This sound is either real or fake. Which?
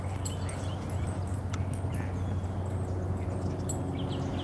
real